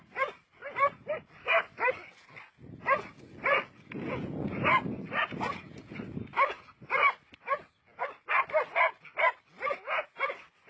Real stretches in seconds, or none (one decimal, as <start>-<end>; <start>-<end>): 0.0-1.4; 1.9-10.7